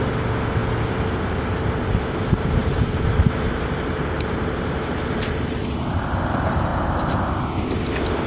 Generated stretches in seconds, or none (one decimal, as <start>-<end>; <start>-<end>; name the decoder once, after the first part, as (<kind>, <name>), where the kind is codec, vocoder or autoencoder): 2.6-6.2 (vocoder, BigVGAN v2)